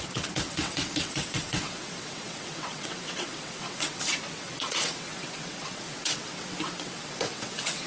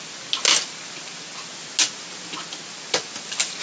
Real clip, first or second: second